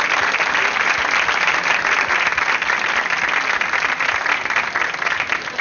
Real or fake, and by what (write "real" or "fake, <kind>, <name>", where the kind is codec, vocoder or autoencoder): real